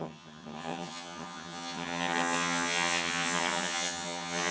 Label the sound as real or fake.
fake